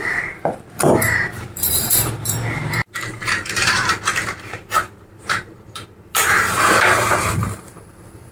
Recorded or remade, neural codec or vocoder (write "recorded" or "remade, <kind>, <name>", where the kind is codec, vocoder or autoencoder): remade, vocoder, BigVGAN v2